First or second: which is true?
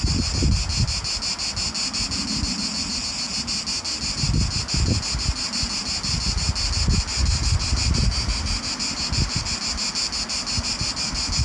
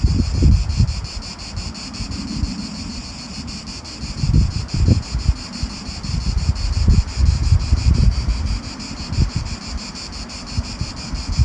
first